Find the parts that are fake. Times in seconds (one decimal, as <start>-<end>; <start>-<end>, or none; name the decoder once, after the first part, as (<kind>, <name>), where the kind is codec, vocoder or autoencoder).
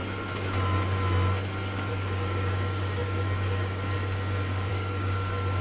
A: 1.9-5.6 (codec, DAC)